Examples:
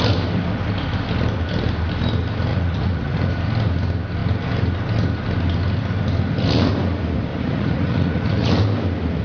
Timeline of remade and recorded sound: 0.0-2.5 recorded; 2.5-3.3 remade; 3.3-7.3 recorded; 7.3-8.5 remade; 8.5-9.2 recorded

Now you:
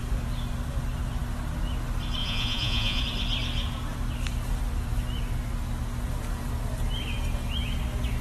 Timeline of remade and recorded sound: 0.0-2.2 recorded; 2.2-3.0 remade; 3.0-8.2 recorded

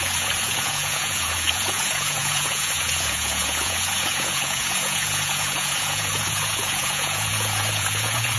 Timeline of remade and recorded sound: 0.0-8.4 remade

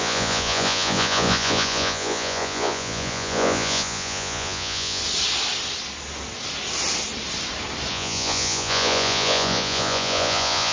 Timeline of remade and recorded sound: 0.0-5.0 remade; 5.0-7.9 recorded; 7.9-10.7 remade

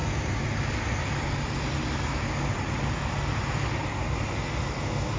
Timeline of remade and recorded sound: 0.0-5.2 recorded